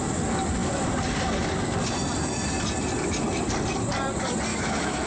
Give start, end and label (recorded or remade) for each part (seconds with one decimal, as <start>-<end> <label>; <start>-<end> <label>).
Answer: 0.0-4.5 recorded; 4.5-5.1 remade